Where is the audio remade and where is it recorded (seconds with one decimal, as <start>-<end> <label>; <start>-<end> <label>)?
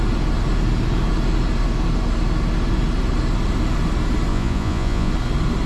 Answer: 0.0-4.3 recorded; 4.3-5.1 remade; 5.1-5.7 recorded